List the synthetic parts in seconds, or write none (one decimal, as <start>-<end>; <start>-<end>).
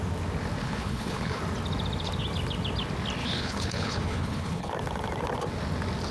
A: 0.6-1.4; 3.2-4.7